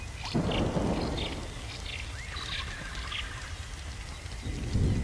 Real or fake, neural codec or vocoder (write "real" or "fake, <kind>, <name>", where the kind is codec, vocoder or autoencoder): real